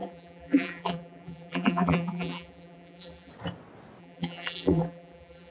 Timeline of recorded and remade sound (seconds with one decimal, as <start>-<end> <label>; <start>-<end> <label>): 0.0-3.3 remade; 3.3-4.0 recorded; 4.0-5.5 remade